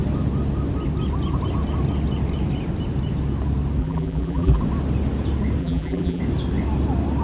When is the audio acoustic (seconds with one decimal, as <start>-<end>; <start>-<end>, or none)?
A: 0.0-3.8; 4.6-5.6; 6.2-7.2